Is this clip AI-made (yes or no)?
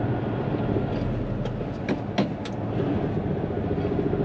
no